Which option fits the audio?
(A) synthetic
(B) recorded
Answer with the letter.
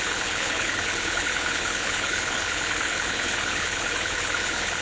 A